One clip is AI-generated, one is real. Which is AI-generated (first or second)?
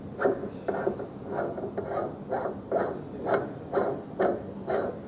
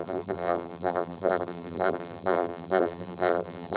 second